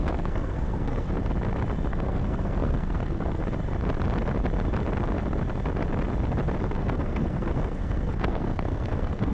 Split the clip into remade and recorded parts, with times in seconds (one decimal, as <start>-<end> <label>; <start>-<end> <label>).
0.0-1.2 remade; 1.2-1.9 recorded; 1.9-3.4 remade; 3.4-6.6 recorded; 6.6-9.3 remade